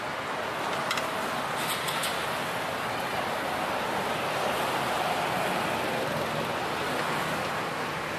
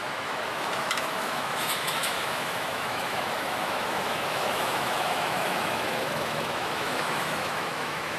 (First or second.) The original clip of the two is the first